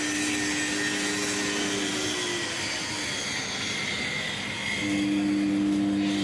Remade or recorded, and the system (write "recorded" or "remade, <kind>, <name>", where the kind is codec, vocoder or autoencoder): recorded